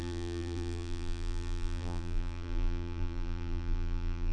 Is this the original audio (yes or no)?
no